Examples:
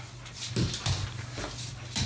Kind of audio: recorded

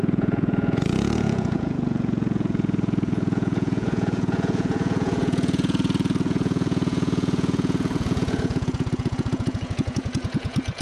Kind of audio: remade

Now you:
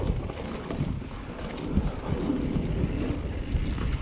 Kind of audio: recorded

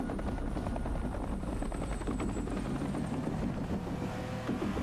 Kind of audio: recorded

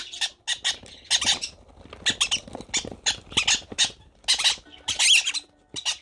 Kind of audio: recorded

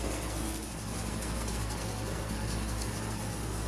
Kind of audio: remade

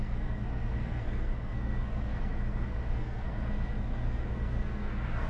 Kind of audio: remade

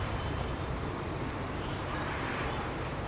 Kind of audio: remade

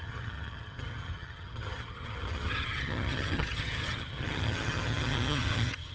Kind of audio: remade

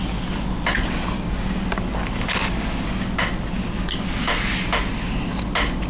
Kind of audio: recorded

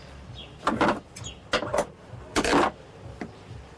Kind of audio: recorded